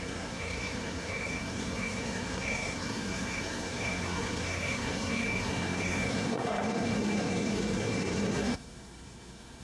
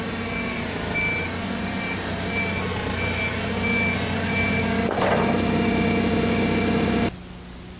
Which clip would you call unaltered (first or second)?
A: second